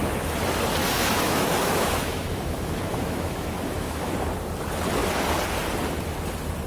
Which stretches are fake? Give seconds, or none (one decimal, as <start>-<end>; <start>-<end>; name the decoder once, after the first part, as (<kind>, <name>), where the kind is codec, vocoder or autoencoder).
0.8-4.1 (autoencoder, DAC-VAE)